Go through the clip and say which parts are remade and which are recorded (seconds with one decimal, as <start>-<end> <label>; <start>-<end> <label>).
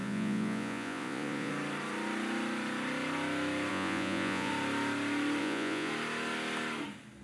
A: 0.0-1.5 remade; 1.5-3.7 recorded; 3.7-4.5 remade; 4.5-5.4 recorded; 5.4-5.9 remade; 5.9-7.2 recorded